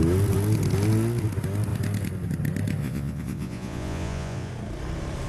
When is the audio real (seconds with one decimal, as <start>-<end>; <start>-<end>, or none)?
0.0-2.8; 4.5-5.3

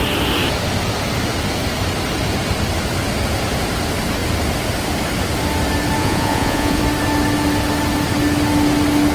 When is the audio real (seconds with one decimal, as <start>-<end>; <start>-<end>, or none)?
0.0-6.0; 6.8-9.1

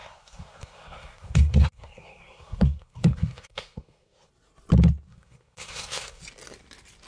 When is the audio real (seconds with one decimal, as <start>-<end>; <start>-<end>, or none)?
4.3-5.1; 6.2-7.1

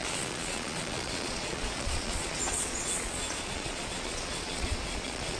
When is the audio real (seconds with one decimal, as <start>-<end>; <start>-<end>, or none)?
none

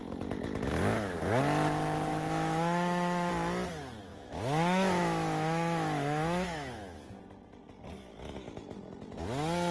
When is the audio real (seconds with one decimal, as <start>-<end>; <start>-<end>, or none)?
0.0-2.1; 3.3-4.1; 7.2-9.7

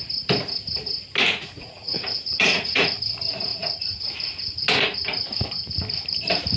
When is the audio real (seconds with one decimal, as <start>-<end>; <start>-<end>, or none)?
0.0-1.2; 3.0-3.5; 4.6-6.6

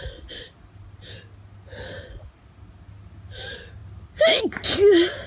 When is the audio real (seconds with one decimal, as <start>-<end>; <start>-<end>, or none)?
0.0-5.3